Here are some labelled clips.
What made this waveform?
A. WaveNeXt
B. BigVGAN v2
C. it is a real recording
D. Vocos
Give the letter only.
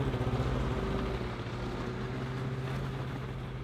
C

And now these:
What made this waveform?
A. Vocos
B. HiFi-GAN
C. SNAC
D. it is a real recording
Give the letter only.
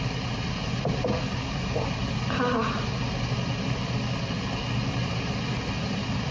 D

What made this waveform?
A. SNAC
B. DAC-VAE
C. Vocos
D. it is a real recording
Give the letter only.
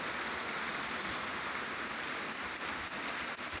D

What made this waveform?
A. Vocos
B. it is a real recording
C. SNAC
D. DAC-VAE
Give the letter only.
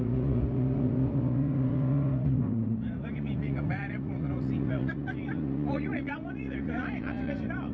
A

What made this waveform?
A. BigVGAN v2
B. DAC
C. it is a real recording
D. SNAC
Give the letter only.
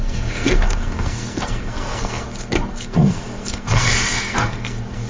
D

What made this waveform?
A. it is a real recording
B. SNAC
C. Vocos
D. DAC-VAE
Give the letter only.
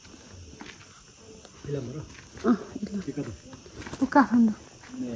A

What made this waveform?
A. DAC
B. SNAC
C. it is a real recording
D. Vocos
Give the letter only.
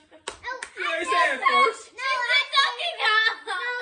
C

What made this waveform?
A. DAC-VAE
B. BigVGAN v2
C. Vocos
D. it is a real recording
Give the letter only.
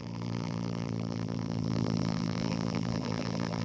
B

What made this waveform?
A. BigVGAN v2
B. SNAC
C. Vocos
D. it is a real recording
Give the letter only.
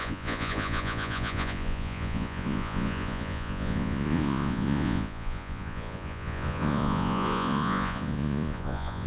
C